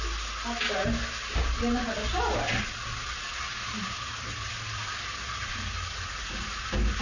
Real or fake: real